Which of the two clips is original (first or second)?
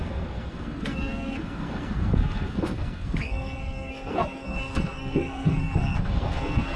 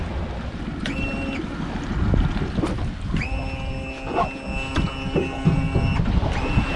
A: second